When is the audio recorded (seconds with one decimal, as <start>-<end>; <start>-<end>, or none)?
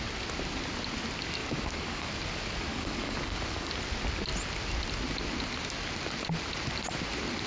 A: 0.0-1.4; 2.1-2.7; 3.7-7.5